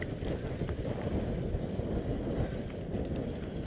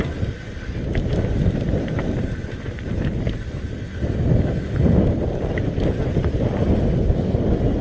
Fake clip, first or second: first